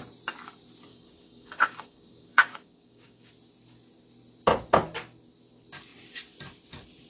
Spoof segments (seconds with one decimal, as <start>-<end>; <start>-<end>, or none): 0.9-3.3